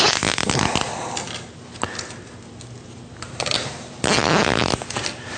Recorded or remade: recorded